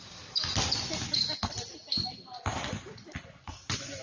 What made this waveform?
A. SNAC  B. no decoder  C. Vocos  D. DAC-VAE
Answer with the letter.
B